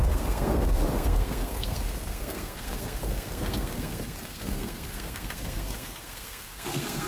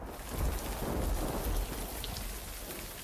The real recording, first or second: second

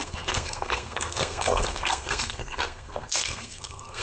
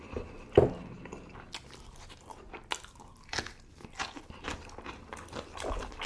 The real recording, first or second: second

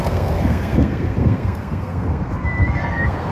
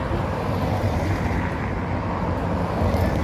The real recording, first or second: second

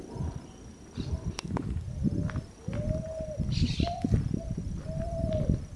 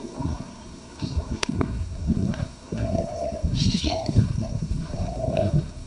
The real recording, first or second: first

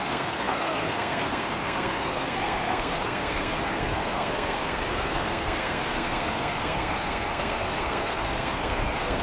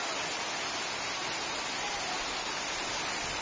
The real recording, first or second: second